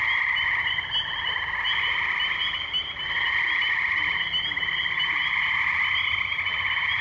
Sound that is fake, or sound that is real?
real